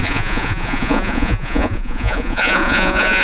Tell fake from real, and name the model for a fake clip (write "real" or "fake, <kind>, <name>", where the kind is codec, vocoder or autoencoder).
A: fake, vocoder, Vocos